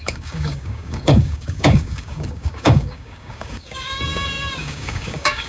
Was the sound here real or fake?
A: fake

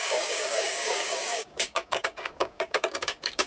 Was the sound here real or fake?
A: fake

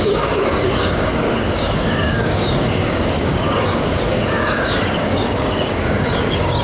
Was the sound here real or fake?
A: fake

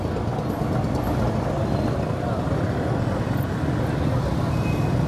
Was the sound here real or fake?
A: real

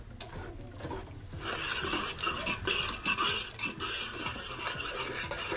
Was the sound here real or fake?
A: real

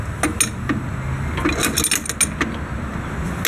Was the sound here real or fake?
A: real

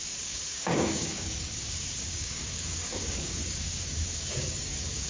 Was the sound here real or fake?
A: fake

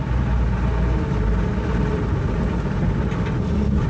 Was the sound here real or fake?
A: real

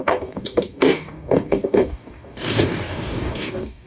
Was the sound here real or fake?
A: fake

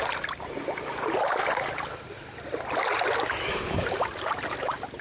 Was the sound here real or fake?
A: real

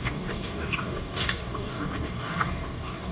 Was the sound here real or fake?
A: fake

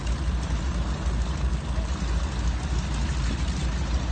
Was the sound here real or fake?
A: real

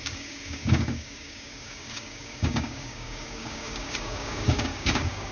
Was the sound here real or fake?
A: fake